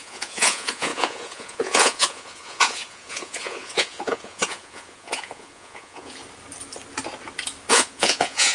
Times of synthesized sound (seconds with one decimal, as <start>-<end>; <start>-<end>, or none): 0.0-6.2; 7.7-8.5